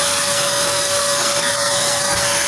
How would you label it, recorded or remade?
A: remade